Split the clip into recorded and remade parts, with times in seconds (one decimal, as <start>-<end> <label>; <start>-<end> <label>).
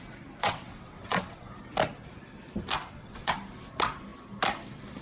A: 0.0-0.4 recorded; 0.4-1.5 remade; 1.5-2.8 recorded; 2.8-3.3 remade; 3.3-5.0 recorded